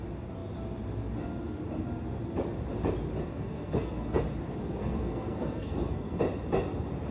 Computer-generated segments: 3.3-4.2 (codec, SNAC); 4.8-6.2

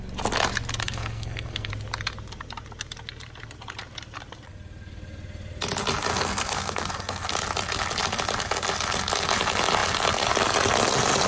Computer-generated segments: 0.8-1.7 (codec, SNAC); 6.1-7.3